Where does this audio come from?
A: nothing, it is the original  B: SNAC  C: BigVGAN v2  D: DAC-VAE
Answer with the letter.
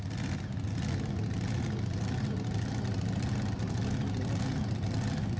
A